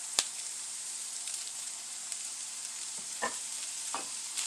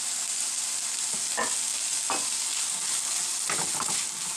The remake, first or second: first